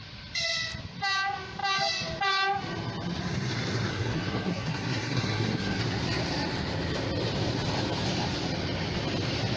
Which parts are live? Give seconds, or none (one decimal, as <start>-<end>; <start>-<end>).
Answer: 0.0-3.9; 5.8-9.6